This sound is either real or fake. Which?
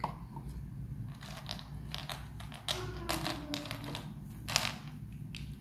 real